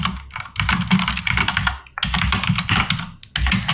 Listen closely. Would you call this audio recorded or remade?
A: recorded